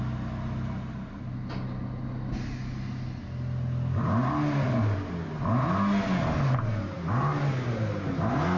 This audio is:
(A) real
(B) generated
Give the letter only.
A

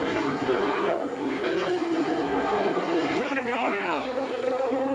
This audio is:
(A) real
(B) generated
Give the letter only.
B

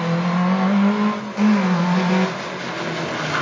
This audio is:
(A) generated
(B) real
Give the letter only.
B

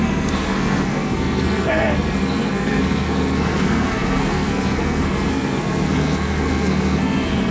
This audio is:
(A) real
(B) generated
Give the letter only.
B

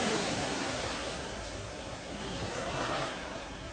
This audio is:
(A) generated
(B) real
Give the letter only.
A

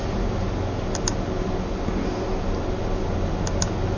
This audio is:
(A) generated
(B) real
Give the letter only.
B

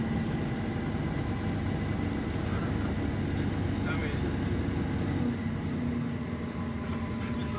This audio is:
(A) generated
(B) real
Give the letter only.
B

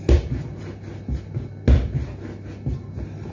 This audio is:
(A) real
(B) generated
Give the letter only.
A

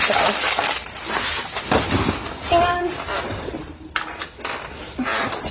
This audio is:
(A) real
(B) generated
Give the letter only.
A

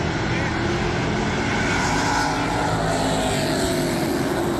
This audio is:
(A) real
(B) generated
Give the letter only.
A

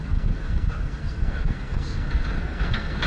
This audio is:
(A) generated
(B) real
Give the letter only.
A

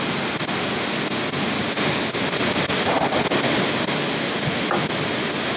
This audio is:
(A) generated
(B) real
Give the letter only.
B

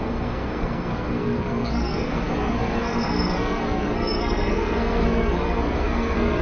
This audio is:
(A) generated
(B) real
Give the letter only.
A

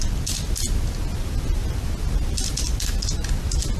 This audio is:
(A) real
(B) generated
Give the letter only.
A